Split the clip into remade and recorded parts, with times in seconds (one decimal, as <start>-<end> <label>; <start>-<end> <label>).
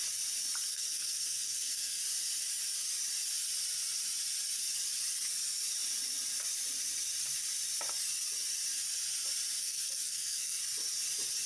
0.0-0.7 recorded; 0.7-2.0 remade; 2.0-9.6 recorded; 9.6-10.6 remade; 10.6-11.5 recorded